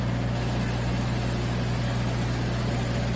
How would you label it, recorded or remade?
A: recorded